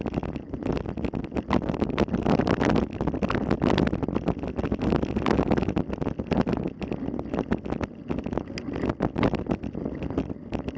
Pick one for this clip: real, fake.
real